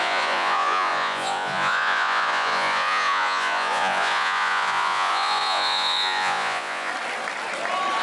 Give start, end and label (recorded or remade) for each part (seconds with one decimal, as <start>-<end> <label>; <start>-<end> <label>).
0.0-6.9 remade; 6.9-8.0 recorded